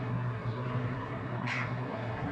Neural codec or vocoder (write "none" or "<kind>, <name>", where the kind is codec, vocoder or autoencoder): codec, SNAC